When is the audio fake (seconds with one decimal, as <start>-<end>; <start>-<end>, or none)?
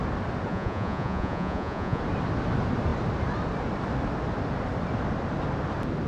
0.5-2.0